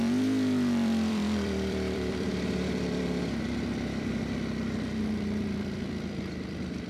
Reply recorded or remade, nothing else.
remade